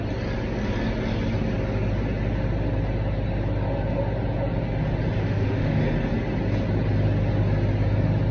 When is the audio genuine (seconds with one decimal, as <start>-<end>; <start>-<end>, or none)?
0.0-5.2; 5.8-8.3